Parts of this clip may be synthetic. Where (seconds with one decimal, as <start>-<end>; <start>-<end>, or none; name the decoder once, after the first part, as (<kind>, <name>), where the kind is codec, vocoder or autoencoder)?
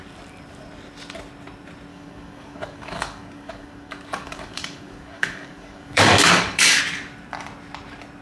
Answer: 1.9-6.8 (codec, DAC)